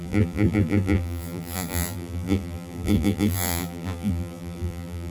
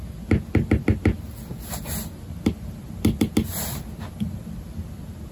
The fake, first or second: first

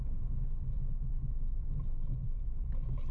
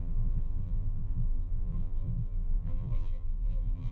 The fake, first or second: second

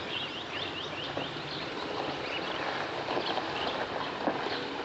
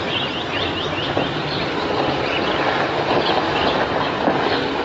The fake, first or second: first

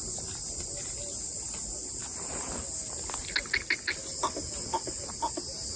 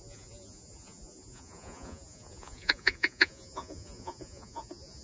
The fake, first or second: second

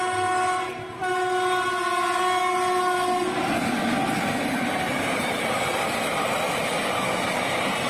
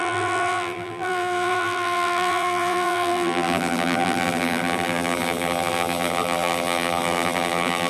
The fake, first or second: second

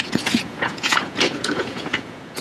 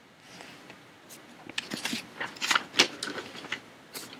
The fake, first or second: first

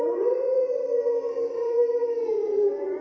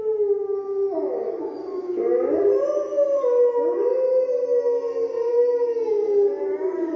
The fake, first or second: first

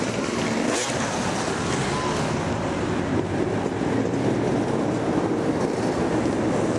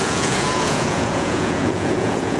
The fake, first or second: second